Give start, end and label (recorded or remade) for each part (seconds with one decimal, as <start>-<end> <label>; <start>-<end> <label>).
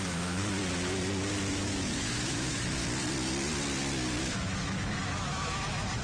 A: 0.0-0.4 remade; 0.4-1.5 recorded; 1.5-2.8 remade; 2.8-4.2 recorded; 4.2-6.0 remade